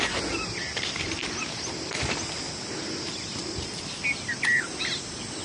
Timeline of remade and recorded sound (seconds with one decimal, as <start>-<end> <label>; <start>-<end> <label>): 0.0-5.4 recorded